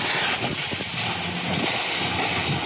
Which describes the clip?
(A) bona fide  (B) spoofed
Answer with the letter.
A